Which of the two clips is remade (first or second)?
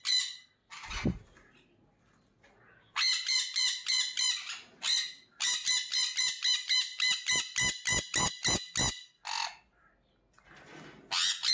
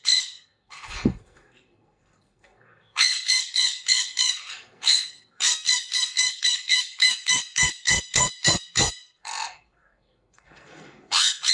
second